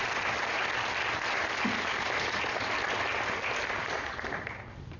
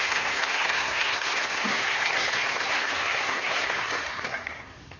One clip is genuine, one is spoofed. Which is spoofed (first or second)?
second